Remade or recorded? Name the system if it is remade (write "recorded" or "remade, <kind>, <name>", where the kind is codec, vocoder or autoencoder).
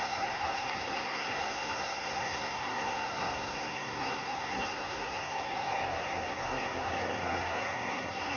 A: remade, codec, SNAC